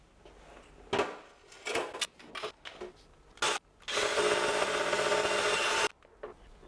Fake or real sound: real